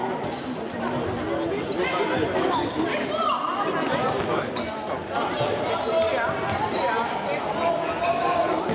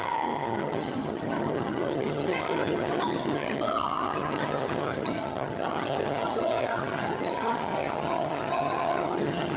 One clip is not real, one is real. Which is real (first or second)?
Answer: first